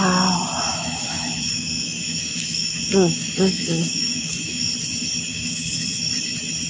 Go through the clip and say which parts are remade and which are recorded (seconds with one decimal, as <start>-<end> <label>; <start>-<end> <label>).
0.0-0.7 recorded; 0.7-4.7 remade; 4.7-5.3 recorded; 5.3-6.0 remade; 6.0-6.7 recorded